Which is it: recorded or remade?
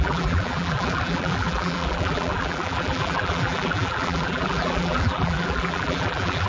remade